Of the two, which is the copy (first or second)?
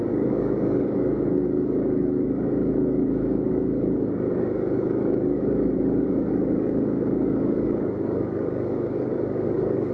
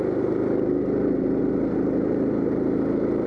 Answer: first